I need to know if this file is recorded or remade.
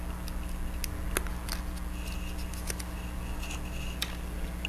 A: recorded